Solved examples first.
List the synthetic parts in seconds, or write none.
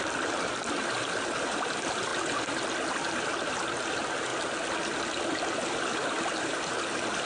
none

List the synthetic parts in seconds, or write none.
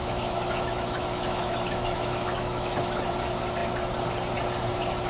0.0-3.1 (autoencoder, DAC-VAE)